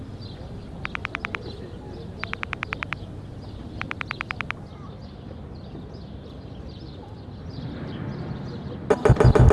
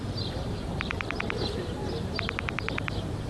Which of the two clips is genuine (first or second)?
first